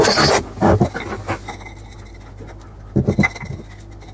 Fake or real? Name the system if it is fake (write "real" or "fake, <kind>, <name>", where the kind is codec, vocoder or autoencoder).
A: real